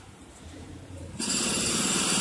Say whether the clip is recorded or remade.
remade